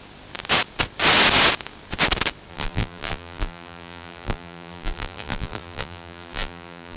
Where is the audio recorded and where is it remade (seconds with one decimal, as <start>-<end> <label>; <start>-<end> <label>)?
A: 0.0-2.5 recorded; 2.5-7.0 remade